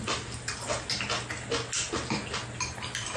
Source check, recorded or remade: recorded